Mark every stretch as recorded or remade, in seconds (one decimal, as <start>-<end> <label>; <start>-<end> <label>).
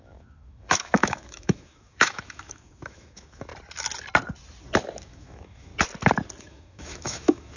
0.0-3.5 remade; 3.5-5.0 recorded; 5.0-5.7 remade; 5.7-6.4 recorded; 6.4-7.6 remade